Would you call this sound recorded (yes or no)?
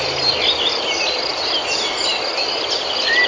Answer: yes